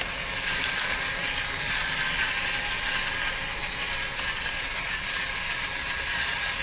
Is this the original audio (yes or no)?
yes